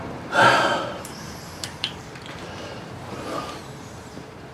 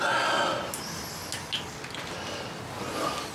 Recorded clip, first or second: second